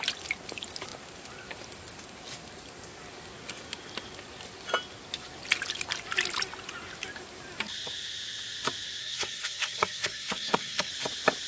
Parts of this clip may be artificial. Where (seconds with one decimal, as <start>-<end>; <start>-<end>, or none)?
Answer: 9.0-10.9